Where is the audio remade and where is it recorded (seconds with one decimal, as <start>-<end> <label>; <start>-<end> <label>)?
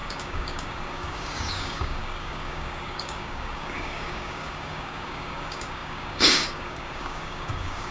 0.0-7.9 remade